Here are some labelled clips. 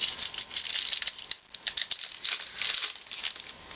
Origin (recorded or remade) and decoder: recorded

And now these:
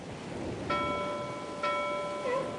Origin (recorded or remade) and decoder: recorded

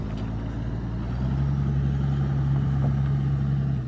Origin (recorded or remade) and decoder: recorded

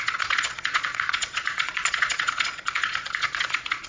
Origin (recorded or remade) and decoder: remade, vocoder, Vocos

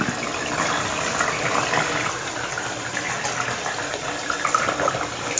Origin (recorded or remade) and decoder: recorded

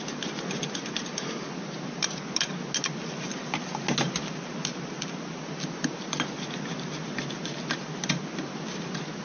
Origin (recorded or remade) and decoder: recorded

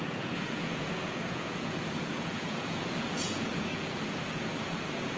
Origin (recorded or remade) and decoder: remade, vocoder, Vocos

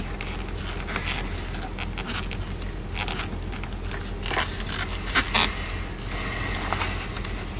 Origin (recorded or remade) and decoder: recorded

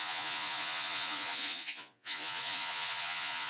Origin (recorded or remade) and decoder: remade, vocoder, Vocos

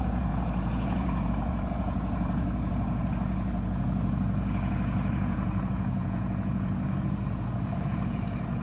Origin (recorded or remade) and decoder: remade, vocoder, Vocos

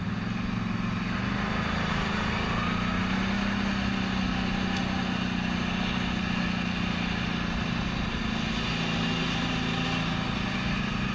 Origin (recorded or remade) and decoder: recorded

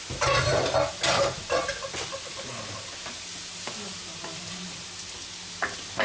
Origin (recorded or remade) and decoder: recorded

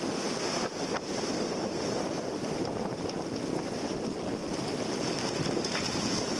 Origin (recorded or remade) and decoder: recorded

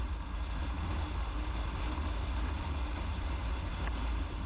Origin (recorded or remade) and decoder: recorded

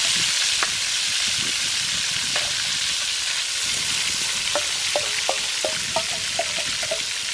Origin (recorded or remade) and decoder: recorded